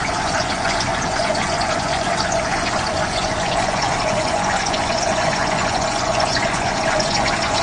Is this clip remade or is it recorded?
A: remade